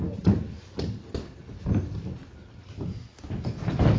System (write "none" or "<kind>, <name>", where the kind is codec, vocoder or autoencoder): none